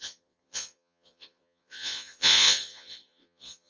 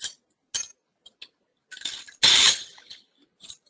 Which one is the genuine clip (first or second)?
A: second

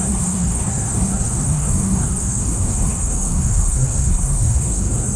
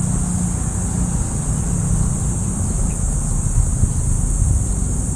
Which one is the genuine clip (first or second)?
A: second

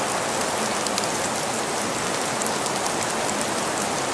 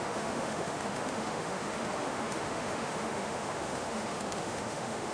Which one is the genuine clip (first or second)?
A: first